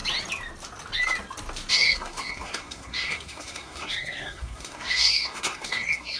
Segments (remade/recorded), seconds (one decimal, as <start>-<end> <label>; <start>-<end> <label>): 0.0-1.7 recorded; 1.7-6.2 remade